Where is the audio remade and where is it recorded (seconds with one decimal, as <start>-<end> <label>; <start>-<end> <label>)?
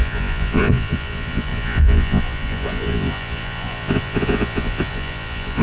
0.0-5.6 remade